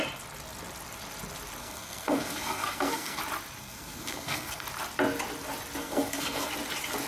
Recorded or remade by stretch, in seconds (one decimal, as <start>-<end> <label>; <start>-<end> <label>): 0.0-1.6 recorded; 1.6-3.2 remade; 3.2-3.6 recorded; 3.6-4.6 remade; 4.6-5.8 recorded; 5.8-6.5 remade; 6.5-7.1 recorded